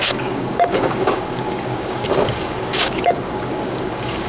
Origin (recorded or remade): remade